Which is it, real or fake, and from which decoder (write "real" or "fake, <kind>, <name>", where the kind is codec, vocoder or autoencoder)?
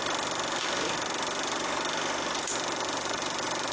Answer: real